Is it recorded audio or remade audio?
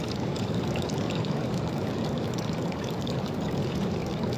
remade